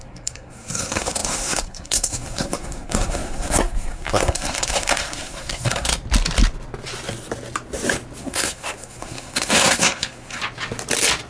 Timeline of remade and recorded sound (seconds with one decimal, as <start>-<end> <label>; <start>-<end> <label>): 0.0-5.9 remade; 5.9-8.2 recorded; 8.2-10.4 remade; 10.4-11.3 recorded